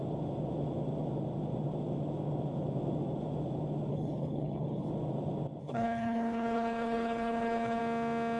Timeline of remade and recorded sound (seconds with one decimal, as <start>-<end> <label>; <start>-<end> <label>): 0.0-3.9 recorded; 3.9-4.9 remade; 4.9-5.6 recorded; 5.6-7.8 remade; 7.8-8.4 recorded